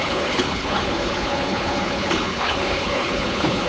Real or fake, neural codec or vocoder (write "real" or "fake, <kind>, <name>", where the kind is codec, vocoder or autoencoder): fake, codec, HILCodec